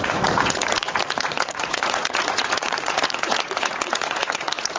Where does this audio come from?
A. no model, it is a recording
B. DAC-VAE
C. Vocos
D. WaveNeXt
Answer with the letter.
C